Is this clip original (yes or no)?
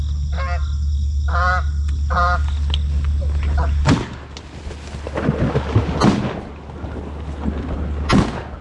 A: yes